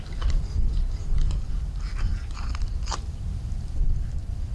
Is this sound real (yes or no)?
yes